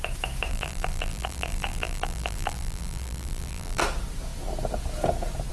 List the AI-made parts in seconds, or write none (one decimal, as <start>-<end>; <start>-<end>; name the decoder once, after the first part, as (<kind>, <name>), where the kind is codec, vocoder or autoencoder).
0.5-3.8 (vocoder, BigVGAN v2)